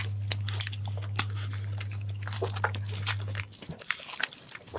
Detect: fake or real real